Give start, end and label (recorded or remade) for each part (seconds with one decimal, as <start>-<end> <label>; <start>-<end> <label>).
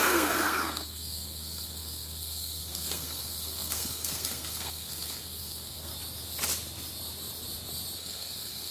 0.0-5.9 remade; 5.9-8.0 recorded; 8.0-8.7 remade